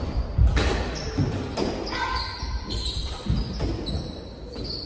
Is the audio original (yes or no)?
yes